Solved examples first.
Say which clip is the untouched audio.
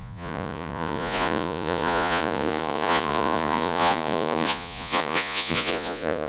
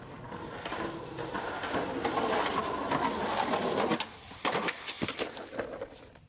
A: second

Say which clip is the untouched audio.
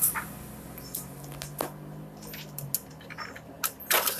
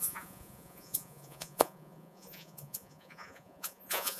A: first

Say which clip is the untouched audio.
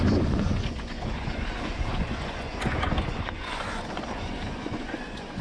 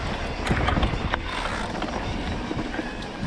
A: second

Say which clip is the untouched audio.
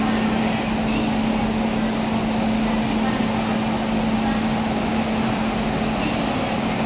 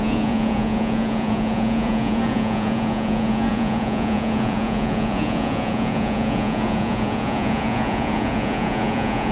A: first